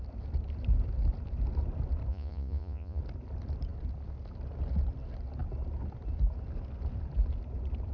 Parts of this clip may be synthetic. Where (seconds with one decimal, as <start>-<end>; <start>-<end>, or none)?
2.1-3.0